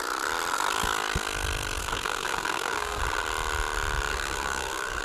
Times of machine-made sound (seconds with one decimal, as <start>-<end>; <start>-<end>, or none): 1.8-3.0; 4.1-5.0